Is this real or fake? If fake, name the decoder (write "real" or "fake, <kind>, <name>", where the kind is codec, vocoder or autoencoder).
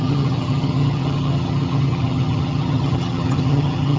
fake, vocoder, HiFi-GAN